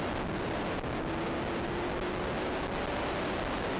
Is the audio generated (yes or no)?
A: no